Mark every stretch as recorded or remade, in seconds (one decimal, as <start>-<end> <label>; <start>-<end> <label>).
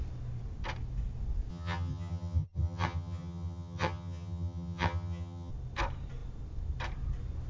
0.0-1.5 recorded; 1.5-5.5 remade; 5.5-7.5 recorded